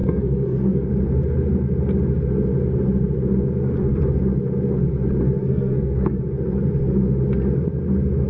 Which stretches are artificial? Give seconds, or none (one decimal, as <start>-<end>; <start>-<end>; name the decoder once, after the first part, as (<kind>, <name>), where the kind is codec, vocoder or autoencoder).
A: 0.0-0.9 (codec, SNAC); 5.4-6.2